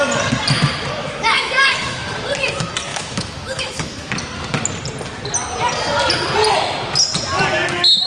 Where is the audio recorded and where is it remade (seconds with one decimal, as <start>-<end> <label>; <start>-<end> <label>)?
0.0-1.0 recorded; 1.0-2.1 remade; 2.1-2.9 recorded; 2.9-4.1 remade; 4.1-8.1 recorded